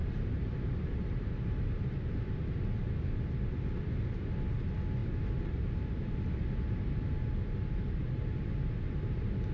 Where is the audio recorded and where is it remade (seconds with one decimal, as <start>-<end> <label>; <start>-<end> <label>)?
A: 0.0-2.4 remade; 2.4-5.0 recorded; 5.0-7.3 remade; 7.3-9.5 recorded